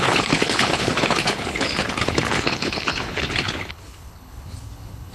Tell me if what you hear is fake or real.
fake